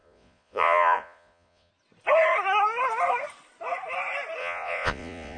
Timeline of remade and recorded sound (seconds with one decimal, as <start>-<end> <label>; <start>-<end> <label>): 0.0-1.7 remade; 1.7-4.4 recorded; 4.4-5.4 remade